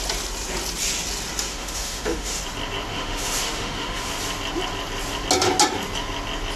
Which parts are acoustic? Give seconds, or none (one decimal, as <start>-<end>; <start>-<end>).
0.0-1.5; 2.4-2.9; 4.1-6.6